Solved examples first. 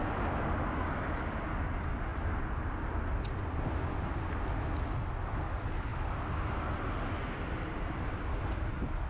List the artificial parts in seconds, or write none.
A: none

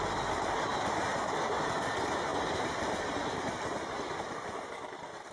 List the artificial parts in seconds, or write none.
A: 1.1-1.7 (vocoder, BigVGAN v2); 2.3-4.6

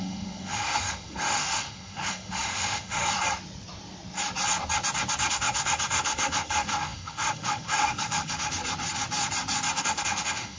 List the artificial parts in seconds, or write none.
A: 0.0-3.0 (autoencoder, DAC-VAE); 5.3-8.6; 9.8-10.6

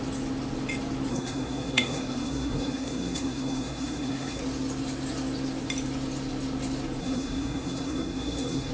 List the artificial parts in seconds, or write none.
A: 1.1-4.4 (codec, SNAC); 7.0-8.7

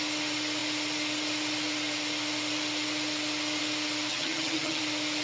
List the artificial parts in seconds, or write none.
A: 4.1-4.8 (vocoder, HiFi-GAN)

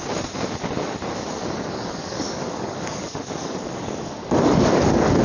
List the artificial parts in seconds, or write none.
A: 2.0-5.2 (codec, DAC)

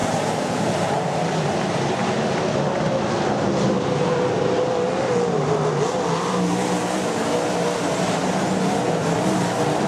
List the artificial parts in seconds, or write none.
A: 0.0-1.4 (vocoder, BigVGAN v2)

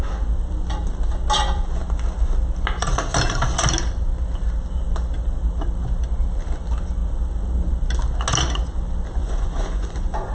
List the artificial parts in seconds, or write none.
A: 9.2-10.3 (vocoder, Vocos)